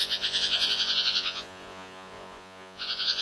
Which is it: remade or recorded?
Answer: remade